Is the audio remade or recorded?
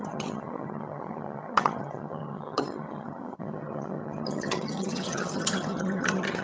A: remade